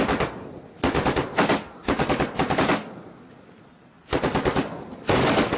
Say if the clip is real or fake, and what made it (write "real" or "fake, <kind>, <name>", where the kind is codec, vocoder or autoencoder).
real